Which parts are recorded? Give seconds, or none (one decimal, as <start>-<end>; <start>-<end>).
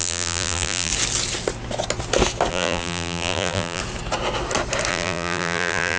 0.9-2.5; 3.8-4.9